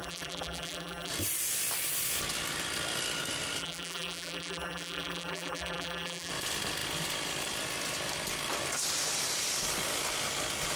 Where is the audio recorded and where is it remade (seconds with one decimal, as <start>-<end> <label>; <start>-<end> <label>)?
0.0-1.1 remade; 1.1-3.6 recorded; 3.6-6.3 remade; 6.3-10.8 recorded